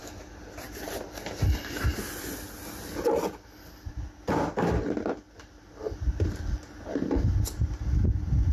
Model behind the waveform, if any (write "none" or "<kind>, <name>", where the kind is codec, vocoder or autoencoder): none